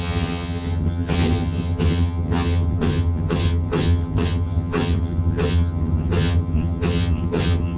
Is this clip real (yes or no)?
no